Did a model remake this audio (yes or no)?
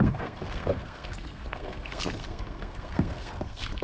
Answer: yes